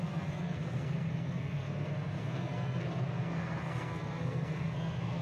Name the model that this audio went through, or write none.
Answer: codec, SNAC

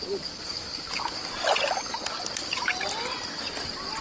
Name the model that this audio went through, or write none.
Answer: none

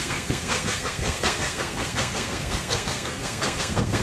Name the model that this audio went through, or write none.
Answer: codec, SNAC